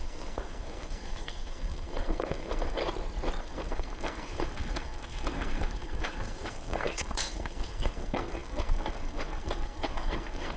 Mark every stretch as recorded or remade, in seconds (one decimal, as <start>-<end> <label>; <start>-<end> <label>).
0.0-2.8 remade; 2.8-3.4 recorded; 3.4-10.6 remade